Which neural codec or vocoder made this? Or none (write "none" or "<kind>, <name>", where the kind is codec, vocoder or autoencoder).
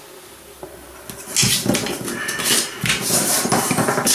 none